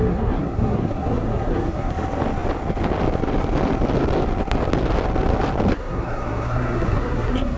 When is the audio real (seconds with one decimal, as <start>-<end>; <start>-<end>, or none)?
1.9-5.7